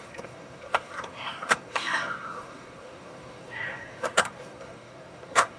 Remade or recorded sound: remade